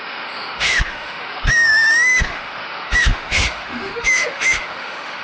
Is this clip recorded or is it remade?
remade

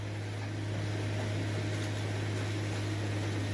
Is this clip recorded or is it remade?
recorded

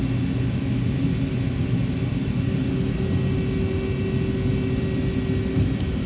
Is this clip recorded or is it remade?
recorded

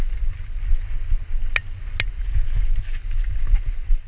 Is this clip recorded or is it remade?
recorded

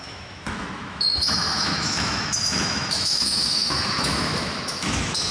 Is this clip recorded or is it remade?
remade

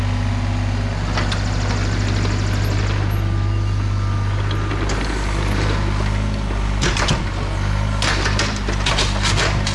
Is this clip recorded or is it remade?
recorded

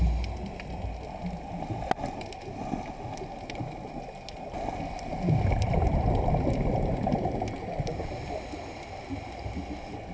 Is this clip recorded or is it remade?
recorded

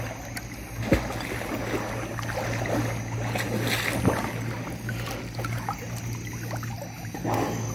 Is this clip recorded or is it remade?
recorded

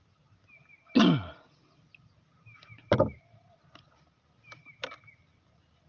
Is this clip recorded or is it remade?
recorded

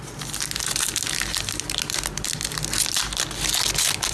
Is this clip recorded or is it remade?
recorded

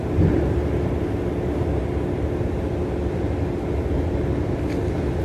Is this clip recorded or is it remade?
recorded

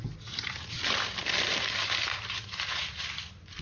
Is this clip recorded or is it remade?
recorded